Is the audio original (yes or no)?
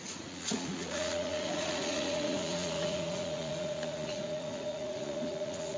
no